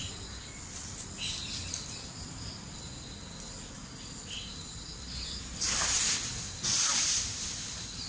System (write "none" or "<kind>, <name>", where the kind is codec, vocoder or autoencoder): none